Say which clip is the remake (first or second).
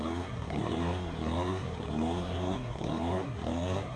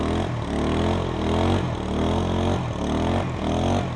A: first